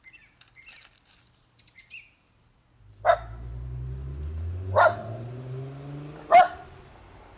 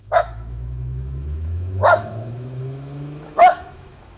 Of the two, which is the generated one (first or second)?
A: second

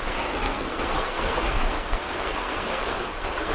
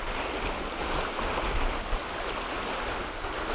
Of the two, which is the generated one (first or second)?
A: first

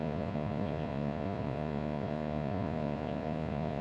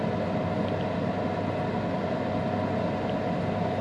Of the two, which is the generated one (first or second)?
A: first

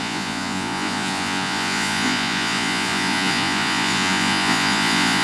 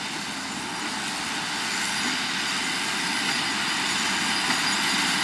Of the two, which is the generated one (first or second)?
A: first